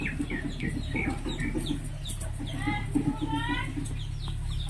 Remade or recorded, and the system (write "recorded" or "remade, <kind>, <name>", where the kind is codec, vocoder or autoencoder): recorded